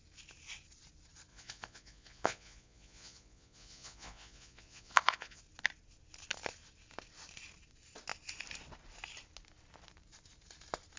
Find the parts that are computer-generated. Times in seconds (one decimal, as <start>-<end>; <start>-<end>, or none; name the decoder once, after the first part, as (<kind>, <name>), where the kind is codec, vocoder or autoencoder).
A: 1.3-5.4 (vocoder, Vocos)